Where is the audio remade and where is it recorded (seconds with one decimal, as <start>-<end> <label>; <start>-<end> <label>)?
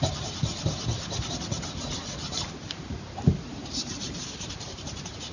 0.0-0.4 remade; 0.4-3.6 recorded; 3.6-5.3 remade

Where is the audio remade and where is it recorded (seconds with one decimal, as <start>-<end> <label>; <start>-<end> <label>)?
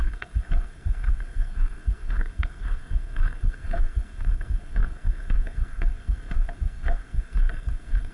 0.0-8.1 remade